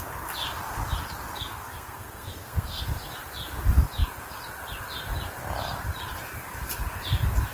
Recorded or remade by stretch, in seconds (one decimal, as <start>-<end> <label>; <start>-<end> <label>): 0.0-1.3 recorded; 1.3-2.8 remade; 2.8-7.5 recorded